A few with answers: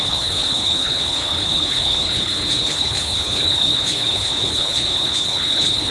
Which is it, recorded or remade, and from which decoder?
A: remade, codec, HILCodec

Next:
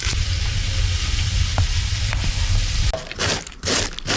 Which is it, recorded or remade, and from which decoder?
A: recorded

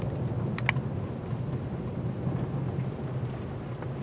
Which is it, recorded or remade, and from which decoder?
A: recorded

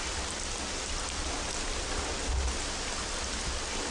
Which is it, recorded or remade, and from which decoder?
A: recorded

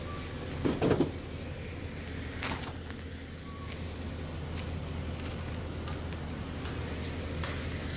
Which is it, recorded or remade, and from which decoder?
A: recorded